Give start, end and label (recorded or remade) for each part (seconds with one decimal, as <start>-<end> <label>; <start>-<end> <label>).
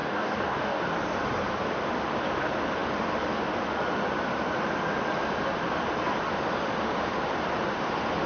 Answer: 0.0-0.8 remade; 0.8-8.3 recorded